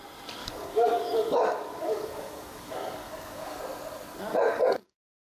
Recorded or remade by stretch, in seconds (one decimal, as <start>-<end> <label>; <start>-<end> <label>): 0.0-0.4 recorded; 0.4-3.6 remade; 3.6-4.3 recorded; 4.3-5.3 remade